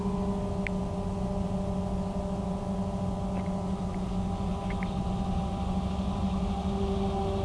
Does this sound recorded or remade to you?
recorded